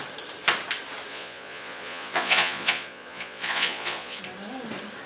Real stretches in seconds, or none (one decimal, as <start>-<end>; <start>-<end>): 0.0-1.1; 4.2-5.1